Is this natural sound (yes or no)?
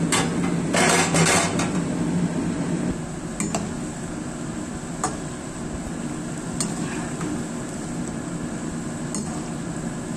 yes